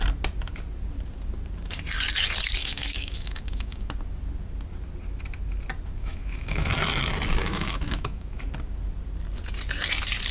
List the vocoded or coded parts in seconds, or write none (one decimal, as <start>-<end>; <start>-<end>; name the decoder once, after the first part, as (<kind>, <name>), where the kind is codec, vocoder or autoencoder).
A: 2.6-3.9 (autoencoder, DAC-VAE); 6.0-6.7; 7.4-8.4